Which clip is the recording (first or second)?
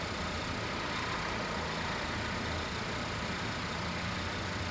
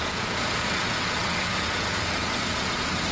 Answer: first